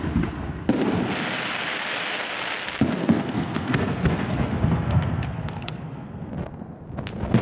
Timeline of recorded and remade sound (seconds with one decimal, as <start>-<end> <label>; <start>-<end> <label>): 0.0-3.0 recorded; 3.0-6.3 remade; 6.3-7.4 recorded